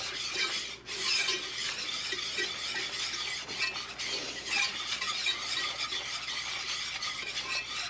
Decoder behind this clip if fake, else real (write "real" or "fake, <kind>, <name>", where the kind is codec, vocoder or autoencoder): real